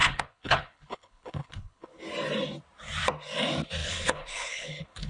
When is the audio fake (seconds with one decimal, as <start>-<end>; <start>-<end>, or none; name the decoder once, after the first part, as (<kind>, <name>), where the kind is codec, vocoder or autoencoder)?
0.0-2.0 (codec, HILCodec); 3.8-5.1